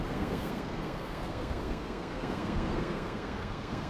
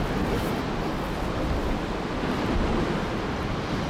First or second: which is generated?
first